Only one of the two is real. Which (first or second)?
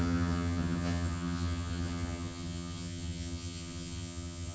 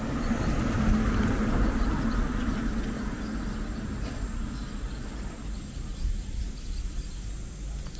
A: second